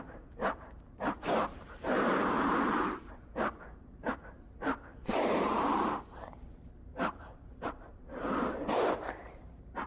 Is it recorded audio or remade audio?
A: remade